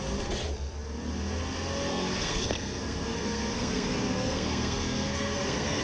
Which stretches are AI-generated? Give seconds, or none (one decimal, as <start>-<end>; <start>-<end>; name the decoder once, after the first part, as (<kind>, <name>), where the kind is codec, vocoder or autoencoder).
1.9-5.8 (codec, SNAC)